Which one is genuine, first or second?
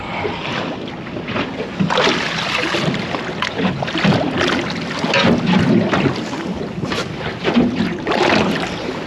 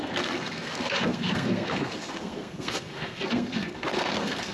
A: first